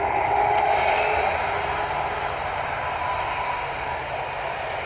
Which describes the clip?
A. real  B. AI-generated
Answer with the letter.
A